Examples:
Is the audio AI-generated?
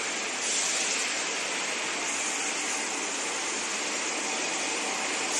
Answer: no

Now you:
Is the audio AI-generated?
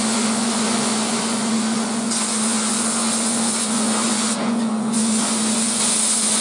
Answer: yes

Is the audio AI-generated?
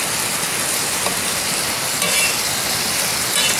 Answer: no